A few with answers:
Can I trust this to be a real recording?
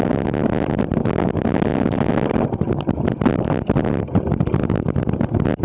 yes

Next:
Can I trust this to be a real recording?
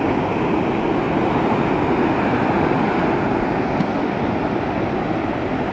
yes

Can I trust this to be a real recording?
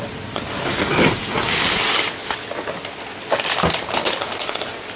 yes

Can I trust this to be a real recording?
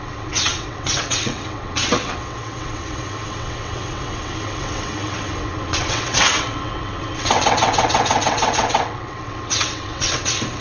no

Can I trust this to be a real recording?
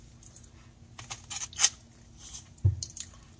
yes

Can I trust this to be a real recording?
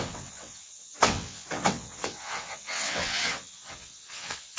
no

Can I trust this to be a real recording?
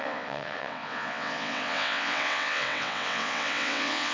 no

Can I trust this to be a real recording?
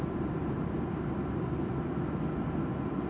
yes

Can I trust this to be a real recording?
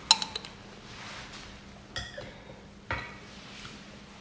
yes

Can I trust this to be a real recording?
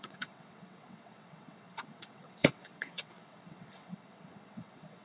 no